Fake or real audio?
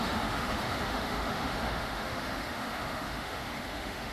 fake